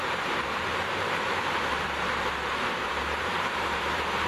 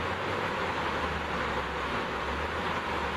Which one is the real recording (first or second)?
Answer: second